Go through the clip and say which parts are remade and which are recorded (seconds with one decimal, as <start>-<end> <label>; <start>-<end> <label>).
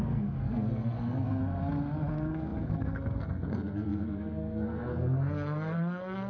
0.0-1.4 remade; 1.4-2.1 recorded; 2.1-6.3 remade